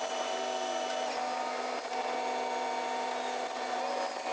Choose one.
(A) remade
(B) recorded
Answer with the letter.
B